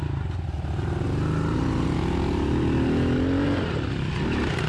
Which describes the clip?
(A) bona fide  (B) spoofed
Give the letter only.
A